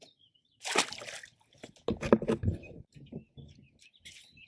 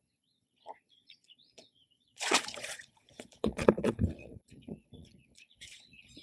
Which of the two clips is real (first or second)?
first